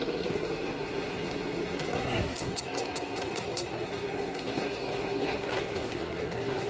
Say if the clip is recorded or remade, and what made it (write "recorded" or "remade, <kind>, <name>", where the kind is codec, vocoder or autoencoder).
remade, codec, SNAC